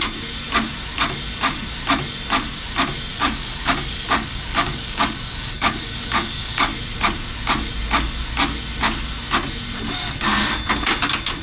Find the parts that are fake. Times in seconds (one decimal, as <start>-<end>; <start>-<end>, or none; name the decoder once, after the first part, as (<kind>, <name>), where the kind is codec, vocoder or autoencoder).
3.1-6.7 (codec, DAC)